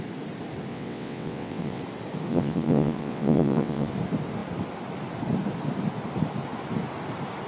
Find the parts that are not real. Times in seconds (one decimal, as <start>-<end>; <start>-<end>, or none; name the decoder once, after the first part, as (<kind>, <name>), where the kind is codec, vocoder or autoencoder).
0.7-1.8 (vocoder, WaveNeXt); 2.3-3.9